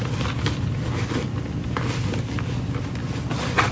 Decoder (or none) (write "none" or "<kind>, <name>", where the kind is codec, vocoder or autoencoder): none